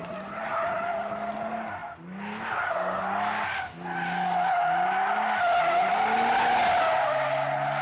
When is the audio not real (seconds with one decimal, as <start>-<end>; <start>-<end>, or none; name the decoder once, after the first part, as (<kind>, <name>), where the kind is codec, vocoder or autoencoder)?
none